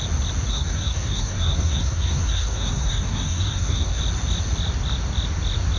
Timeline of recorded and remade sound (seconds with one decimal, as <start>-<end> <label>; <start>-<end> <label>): 0.0-0.5 recorded; 0.5-4.0 remade; 4.0-5.8 recorded